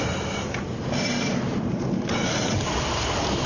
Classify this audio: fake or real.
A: real